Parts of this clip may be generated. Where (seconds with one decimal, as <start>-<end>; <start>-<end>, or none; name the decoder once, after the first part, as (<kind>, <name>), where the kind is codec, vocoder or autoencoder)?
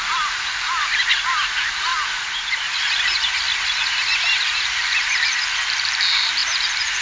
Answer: 0.0-1.9 (vocoder, BigVGAN v2); 4.4-7.0